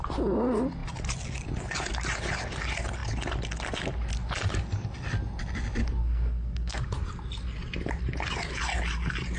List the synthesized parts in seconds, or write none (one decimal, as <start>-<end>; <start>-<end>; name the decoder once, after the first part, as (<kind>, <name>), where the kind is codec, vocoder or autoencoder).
6.0-6.8 (codec, SNAC)